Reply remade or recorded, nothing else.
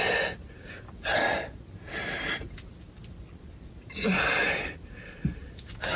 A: recorded